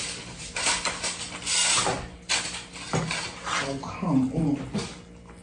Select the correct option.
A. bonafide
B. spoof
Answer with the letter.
A